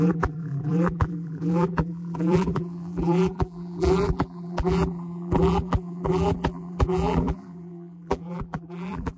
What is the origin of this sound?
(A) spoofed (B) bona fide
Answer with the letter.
A